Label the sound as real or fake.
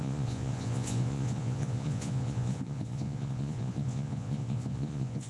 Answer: fake